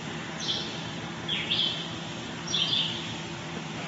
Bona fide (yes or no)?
yes